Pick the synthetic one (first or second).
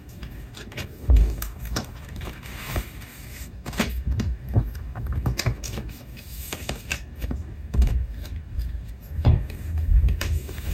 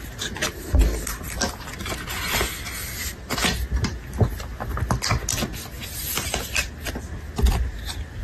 first